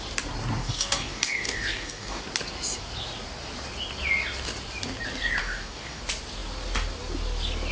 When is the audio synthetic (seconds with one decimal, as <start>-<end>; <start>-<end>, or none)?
0.6-2.2; 5.4-6.0